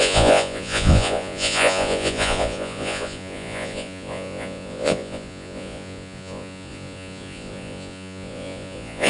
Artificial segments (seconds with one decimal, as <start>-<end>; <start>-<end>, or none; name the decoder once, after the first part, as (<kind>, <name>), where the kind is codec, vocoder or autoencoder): 0.0-9.1 (vocoder, Vocos)